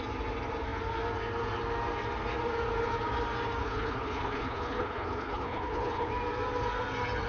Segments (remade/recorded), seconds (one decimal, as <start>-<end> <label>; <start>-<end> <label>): 0.0-3.6 recorded; 3.6-6.1 remade; 6.1-7.3 recorded